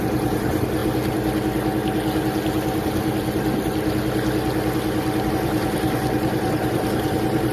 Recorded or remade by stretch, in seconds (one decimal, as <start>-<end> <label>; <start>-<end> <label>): 0.0-0.8 remade; 0.8-5.3 recorded; 5.3-7.5 remade